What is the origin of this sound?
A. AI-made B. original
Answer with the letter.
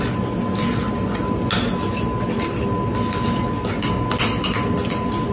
B